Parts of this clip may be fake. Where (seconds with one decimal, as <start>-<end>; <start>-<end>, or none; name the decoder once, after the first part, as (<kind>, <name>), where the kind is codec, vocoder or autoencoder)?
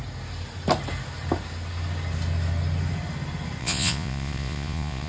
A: 3.6-5.1 (vocoder, Vocos)